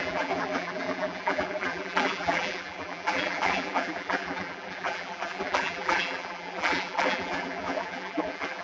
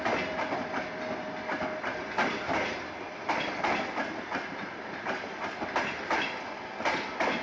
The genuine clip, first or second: second